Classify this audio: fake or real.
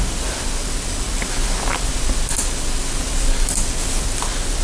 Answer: real